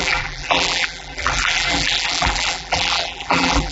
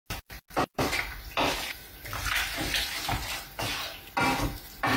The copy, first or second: first